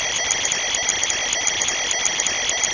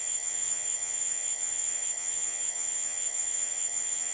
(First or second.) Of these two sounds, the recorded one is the first